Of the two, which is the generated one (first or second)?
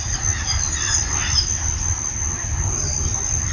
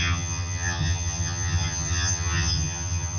second